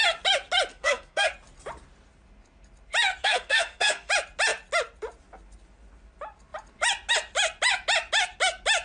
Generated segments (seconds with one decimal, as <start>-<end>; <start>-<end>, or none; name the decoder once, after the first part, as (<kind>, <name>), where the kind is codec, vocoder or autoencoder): 0.7-1.3 (codec, SNAC); 3.2-4.1